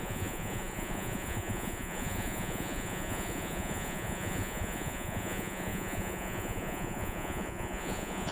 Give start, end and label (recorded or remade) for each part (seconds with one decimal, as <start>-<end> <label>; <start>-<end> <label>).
0.0-8.3 remade

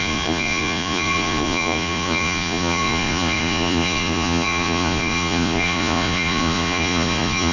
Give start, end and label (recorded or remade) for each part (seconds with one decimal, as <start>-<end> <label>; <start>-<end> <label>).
0.0-7.5 remade